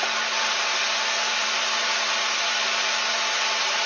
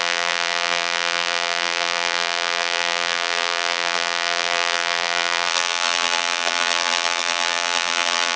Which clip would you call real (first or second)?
first